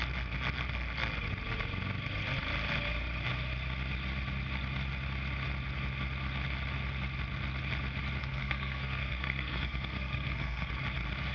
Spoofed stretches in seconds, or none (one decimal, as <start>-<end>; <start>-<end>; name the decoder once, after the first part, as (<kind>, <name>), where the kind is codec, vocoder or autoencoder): 8.2-10.7 (codec, SNAC)